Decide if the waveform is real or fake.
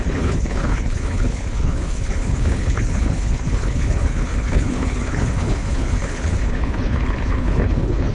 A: fake